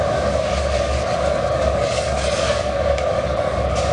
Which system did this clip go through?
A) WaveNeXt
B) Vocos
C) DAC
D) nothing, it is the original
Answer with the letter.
C